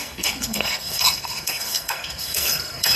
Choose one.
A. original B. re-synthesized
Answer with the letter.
B